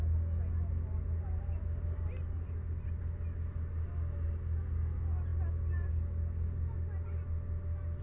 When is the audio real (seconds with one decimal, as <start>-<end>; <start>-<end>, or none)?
0.0-8.0